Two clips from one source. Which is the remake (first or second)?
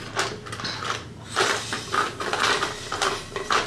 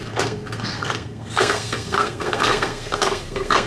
second